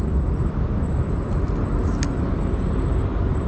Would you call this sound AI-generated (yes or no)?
no